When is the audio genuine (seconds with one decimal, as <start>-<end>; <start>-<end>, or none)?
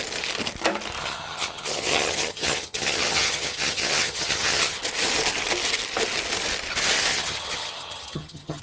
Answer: 0.0-1.0; 4.8-7.1